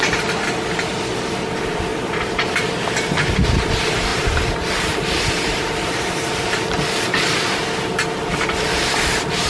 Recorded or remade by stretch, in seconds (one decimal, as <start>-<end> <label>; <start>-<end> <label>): 0.0-1.9 recorded; 1.9-2.8 remade; 2.8-4.1 recorded; 4.1-6.5 remade; 6.5-9.5 recorded